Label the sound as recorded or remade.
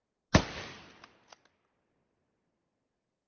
recorded